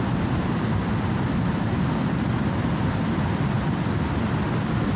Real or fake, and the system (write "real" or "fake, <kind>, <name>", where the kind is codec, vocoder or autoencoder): real